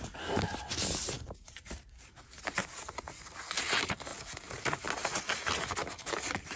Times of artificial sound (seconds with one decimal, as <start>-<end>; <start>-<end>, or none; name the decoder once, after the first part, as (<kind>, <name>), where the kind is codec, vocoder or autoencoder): 0.7-2.4 (vocoder, BigVGAN v2)